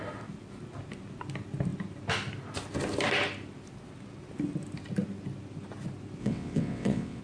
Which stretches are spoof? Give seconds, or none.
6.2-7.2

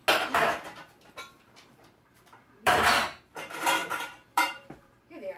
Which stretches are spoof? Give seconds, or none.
1.2-5.4

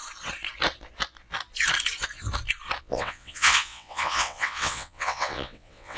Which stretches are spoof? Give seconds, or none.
2.8-6.0

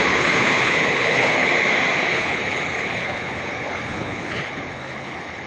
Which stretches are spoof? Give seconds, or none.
0.0-1.5; 2.1-5.5